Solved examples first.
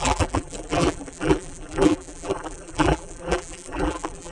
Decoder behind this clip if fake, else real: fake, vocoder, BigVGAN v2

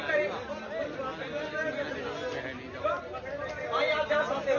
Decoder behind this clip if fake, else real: real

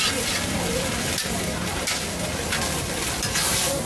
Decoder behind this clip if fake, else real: fake, vocoder, BigVGAN v2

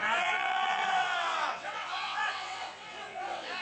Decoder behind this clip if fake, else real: fake, vocoder, WaveNeXt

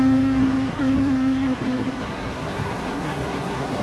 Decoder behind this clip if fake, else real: fake, codec, SNAC